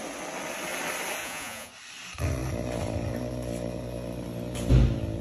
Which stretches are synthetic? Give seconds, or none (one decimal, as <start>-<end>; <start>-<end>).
1.2-1.7